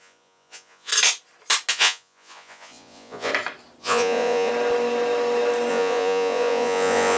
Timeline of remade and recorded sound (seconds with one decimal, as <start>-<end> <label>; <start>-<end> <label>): 0.0-0.9 remade; 0.9-1.7 recorded; 1.7-3.3 remade; 3.3-3.8 recorded; 3.8-4.5 remade; 4.5-5.7 recorded; 5.7-7.2 remade